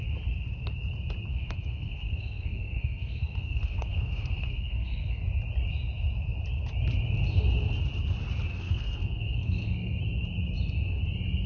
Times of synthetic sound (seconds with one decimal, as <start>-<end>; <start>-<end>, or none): 1.3-5.2; 8.5-10.0